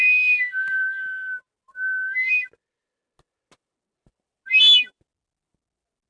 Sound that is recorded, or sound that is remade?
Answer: recorded